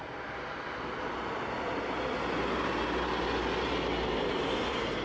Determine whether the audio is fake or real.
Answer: real